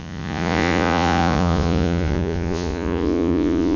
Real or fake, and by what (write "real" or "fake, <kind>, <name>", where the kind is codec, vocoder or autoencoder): fake, vocoder, Vocos